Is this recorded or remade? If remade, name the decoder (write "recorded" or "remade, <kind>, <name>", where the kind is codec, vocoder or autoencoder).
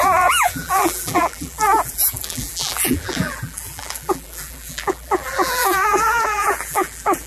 remade, vocoder, BigVGAN v2